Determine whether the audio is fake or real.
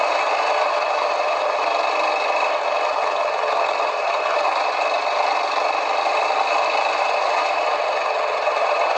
real